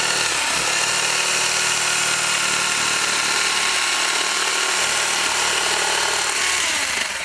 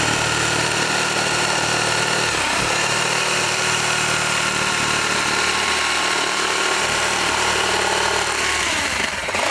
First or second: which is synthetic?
second